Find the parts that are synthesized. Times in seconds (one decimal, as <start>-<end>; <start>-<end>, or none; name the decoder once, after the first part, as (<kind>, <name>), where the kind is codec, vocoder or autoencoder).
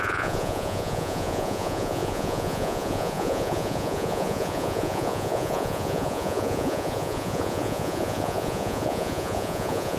0.0-10.0 (vocoder, Vocos)